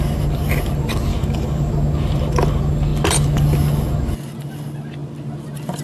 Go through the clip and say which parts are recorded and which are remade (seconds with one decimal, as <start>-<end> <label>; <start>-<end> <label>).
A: 0.0-1.1 recorded; 1.1-1.7 remade; 1.7-5.8 recorded